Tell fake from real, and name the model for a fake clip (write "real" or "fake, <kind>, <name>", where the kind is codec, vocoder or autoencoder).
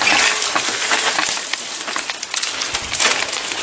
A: real